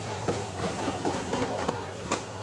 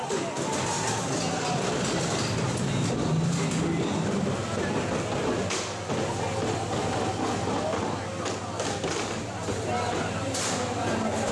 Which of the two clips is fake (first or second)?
first